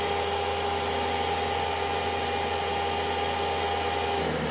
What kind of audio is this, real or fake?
real